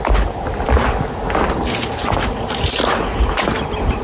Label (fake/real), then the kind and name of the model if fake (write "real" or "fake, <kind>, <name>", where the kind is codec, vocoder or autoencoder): real